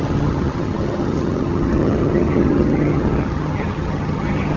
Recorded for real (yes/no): no